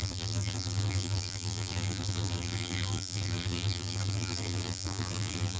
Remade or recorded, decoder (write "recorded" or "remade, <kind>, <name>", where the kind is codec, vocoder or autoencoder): remade, vocoder, BigVGAN v2